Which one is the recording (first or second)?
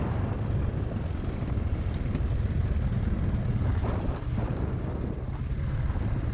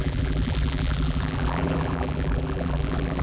first